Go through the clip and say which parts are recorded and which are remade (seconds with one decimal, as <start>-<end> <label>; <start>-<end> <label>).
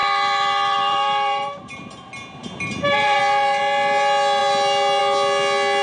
0.0-1.9 remade; 1.9-2.4 recorded; 2.4-3.2 remade; 3.2-5.8 recorded